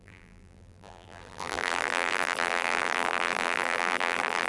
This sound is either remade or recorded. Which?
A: remade